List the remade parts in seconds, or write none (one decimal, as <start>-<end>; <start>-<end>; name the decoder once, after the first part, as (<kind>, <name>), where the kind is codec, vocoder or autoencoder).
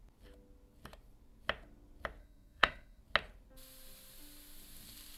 2.2-3.0 (codec, SNAC)